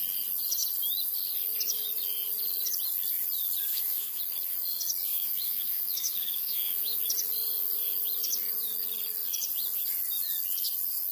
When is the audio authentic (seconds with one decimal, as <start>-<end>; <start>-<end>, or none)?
0.0-3.7; 4.2-5.1; 7.0-11.1